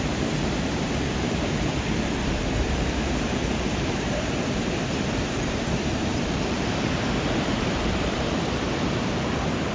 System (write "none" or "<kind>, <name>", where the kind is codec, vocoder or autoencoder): vocoder, BigVGAN v2